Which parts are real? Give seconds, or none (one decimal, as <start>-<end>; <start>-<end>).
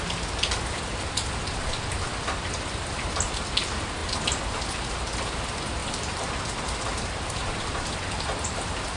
0.0-5.8; 6.3-7.4